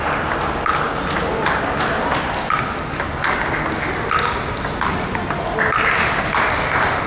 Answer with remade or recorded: recorded